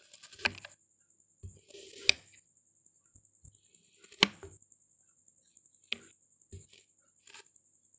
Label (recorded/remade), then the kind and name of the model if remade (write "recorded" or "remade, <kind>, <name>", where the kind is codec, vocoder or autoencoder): recorded